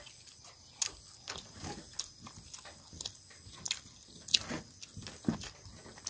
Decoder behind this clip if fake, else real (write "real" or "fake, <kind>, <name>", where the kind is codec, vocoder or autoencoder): real